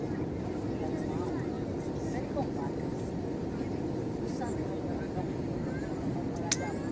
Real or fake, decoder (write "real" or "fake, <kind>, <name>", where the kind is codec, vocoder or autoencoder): real